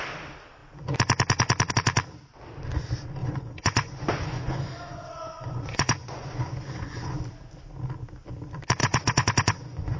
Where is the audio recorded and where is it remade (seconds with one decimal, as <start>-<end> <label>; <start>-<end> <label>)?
0.0-3.2 recorded; 3.2-7.2 remade; 7.2-8.8 recorded; 8.8-10.0 remade